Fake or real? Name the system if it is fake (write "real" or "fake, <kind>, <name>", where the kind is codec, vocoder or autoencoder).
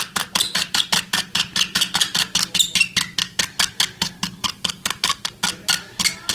real